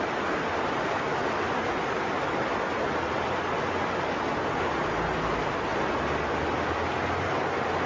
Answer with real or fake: real